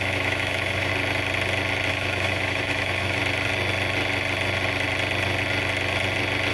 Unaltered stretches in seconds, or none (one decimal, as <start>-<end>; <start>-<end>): 0.9-1.9; 3.2-6.5